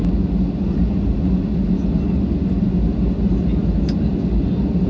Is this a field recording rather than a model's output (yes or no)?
yes